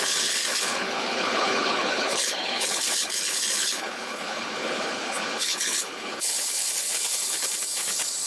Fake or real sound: fake